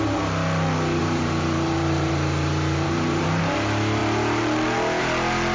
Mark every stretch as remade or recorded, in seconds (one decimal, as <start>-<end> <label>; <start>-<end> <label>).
0.0-1.0 recorded; 1.0-3.4 remade; 3.4-5.5 recorded